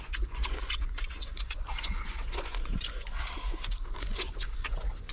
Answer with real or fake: fake